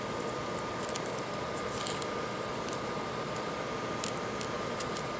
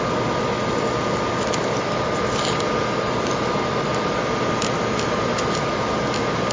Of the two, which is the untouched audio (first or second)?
second